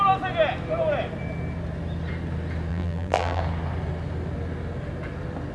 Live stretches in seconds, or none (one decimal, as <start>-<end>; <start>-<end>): 0.0-2.7; 3.4-5.5